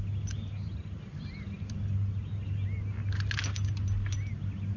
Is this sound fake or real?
real